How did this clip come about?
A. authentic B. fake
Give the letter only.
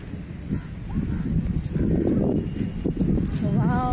A